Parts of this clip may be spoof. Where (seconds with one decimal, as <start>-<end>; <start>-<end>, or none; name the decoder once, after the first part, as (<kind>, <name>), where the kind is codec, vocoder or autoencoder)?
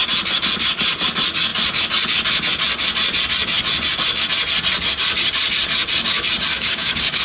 6.5-7.2 (codec, DAC)